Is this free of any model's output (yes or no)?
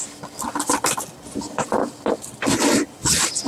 yes